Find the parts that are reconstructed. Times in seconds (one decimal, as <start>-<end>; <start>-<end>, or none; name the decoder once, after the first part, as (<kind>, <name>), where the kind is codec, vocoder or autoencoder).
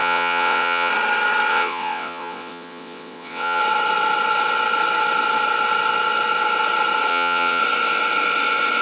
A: 0.0-0.9 (vocoder, WaveNeXt); 1.5-3.6; 7.1-7.6